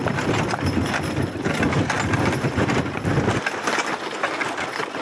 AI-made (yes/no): no